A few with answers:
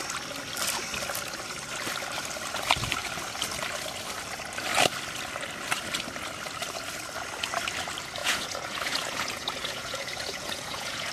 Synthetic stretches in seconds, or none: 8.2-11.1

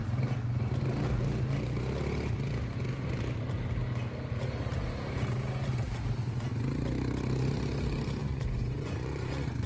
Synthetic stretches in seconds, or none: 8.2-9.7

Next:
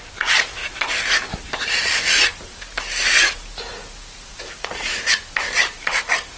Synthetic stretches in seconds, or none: 4.3-5.1